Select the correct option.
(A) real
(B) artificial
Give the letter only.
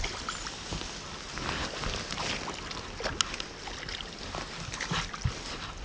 A